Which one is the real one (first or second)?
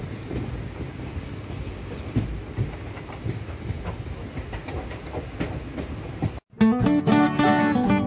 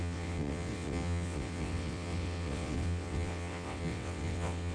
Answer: first